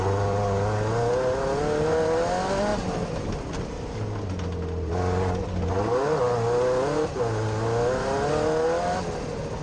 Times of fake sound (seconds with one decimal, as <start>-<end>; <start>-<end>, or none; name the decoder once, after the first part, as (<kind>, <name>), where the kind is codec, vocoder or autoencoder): none